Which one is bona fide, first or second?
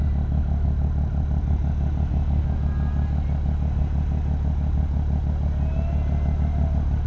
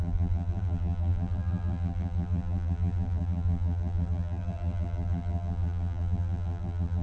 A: first